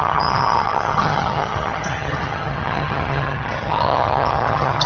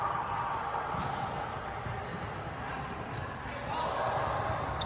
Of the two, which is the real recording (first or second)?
second